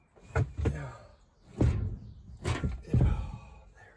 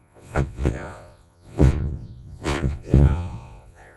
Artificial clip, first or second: second